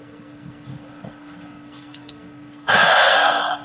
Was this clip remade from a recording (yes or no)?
yes